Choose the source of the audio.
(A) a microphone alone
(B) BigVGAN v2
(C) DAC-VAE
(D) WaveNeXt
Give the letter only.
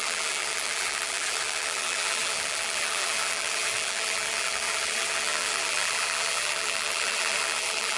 B